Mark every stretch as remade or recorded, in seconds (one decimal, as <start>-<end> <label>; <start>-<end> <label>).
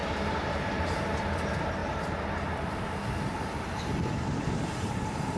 0.0-1.0 remade; 1.0-1.8 recorded; 1.8-4.9 remade; 4.9-5.4 recorded